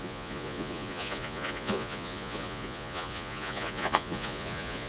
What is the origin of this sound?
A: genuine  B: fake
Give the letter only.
B